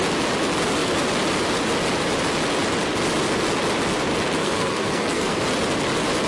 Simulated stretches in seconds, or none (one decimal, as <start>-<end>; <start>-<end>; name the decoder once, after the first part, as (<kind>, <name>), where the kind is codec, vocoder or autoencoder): 4.4-5.4 (codec, SNAC)